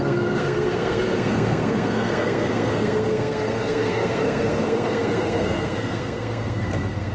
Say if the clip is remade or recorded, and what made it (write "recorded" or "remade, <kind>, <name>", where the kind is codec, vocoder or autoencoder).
remade, codec, SNAC